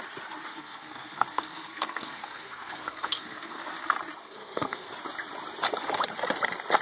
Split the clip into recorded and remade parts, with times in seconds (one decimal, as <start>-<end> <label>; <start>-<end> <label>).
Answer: 0.0-0.5 recorded; 0.5-3.6 remade; 3.6-4.2 recorded; 4.2-4.9 remade; 4.9-6.8 recorded